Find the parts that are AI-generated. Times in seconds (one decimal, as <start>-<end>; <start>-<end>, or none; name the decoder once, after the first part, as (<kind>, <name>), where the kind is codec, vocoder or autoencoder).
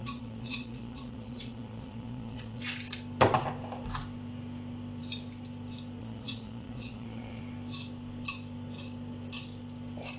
0.0-2.6 (vocoder, Vocos); 6.0-7.4